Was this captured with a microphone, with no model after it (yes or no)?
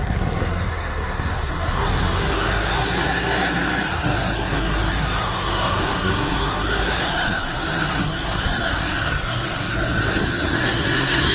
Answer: no